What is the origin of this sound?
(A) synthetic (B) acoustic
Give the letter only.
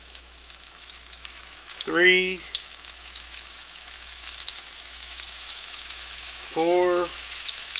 A